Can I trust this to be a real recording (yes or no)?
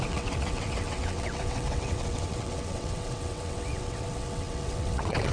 no